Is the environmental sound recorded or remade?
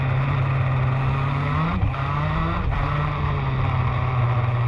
recorded